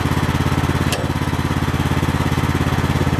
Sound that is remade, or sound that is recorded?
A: recorded